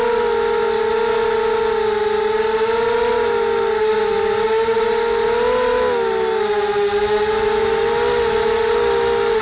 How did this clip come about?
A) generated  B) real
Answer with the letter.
B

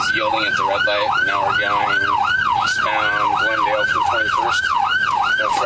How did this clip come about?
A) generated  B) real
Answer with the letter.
B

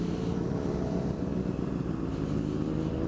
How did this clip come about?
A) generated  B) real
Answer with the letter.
B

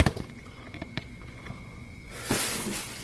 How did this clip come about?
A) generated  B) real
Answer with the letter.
A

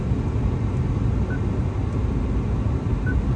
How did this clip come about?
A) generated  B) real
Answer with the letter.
B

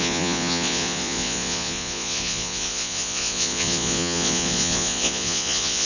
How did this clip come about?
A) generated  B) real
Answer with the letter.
A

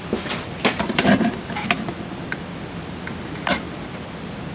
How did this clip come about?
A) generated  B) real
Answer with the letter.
B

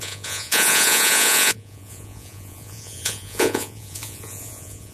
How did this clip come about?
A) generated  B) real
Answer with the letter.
A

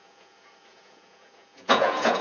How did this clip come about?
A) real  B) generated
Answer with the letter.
B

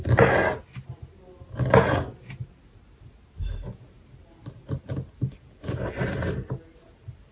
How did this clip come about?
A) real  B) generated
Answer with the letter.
A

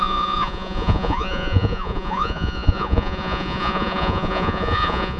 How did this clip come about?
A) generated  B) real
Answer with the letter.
A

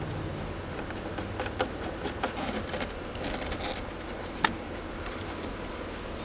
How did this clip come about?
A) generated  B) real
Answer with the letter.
B